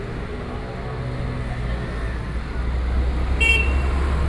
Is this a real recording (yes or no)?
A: yes